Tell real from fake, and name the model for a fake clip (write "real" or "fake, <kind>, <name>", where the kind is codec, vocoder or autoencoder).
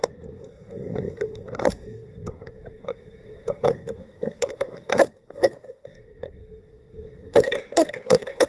fake, codec, SNAC